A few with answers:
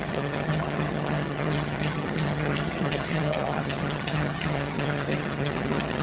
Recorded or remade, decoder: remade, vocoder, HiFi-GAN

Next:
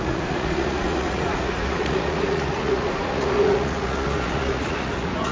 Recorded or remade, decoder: remade, vocoder, Vocos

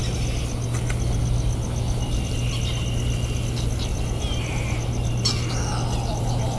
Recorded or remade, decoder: recorded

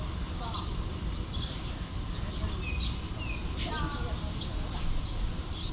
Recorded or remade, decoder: recorded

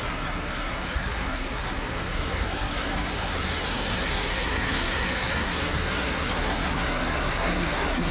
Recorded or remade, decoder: remade, codec, SNAC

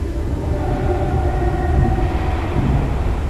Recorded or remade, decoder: recorded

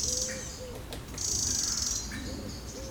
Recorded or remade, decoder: recorded